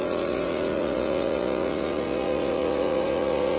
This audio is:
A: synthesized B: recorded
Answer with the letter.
A